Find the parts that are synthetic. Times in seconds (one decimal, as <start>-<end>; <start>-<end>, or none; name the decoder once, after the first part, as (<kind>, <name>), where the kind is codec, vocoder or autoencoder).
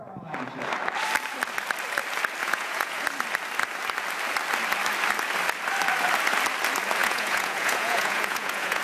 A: 2.4-3.0 (vocoder, Vocos); 7.0-8.8